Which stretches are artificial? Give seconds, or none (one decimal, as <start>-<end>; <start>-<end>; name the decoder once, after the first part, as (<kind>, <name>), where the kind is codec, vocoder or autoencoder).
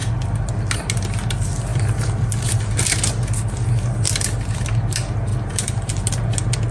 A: 1.7-2.8 (vocoder, BigVGAN v2)